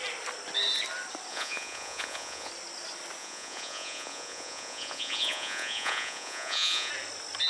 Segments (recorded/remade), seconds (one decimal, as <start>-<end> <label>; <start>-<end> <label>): 0.0-1.3 recorded; 1.3-2.5 remade; 2.5-3.2 recorded; 3.2-6.9 remade; 6.9-7.5 recorded